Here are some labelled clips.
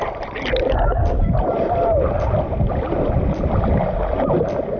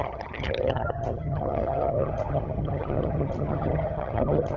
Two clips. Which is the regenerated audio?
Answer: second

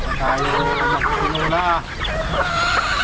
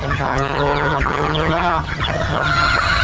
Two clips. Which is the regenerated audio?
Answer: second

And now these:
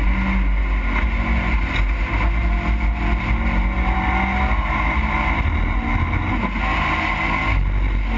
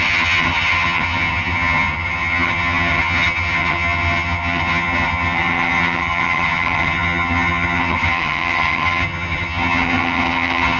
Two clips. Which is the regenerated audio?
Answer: second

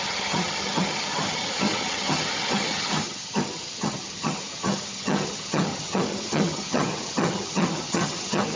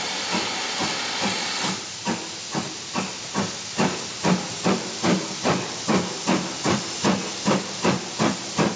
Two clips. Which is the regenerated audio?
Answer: first